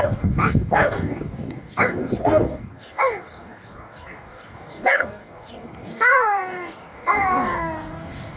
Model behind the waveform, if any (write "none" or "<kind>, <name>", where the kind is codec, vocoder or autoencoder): codec, DAC